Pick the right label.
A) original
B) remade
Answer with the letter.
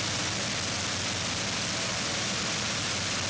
A